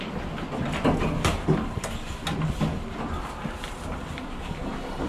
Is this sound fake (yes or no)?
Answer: no